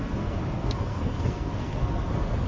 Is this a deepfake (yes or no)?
yes